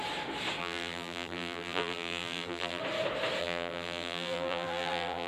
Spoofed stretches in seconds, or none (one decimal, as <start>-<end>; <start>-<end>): 0.6-2.8; 3.4-5.3